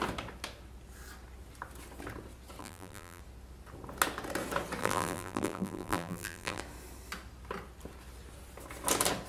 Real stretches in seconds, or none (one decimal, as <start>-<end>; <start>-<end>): 0.0-2.6; 3.2-4.8; 6.6-9.3